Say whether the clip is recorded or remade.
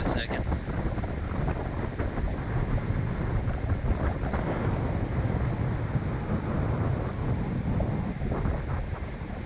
recorded